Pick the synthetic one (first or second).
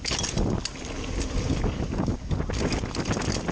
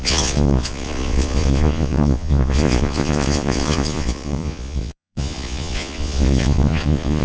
second